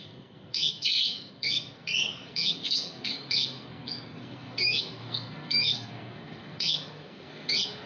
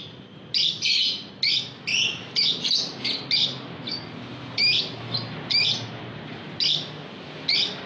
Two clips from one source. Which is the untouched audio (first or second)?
second